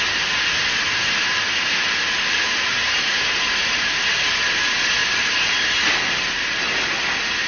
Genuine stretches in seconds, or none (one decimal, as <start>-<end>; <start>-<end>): 0.0-7.5